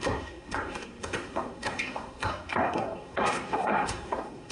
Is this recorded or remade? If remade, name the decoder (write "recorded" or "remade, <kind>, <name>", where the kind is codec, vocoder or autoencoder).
remade, codec, SNAC